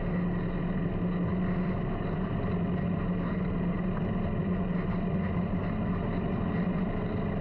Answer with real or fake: real